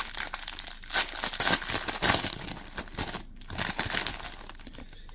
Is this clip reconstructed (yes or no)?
no